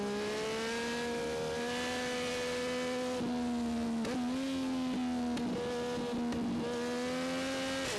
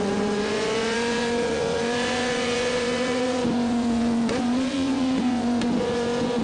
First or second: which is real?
first